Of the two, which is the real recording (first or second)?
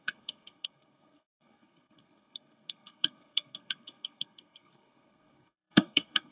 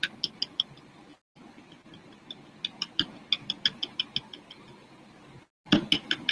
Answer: second